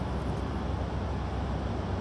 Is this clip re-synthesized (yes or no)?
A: no